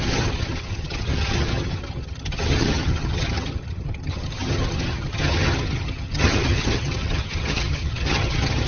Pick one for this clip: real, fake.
fake